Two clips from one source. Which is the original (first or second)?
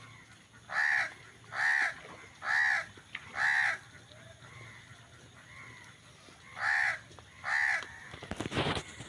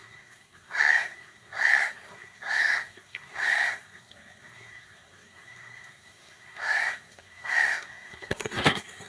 first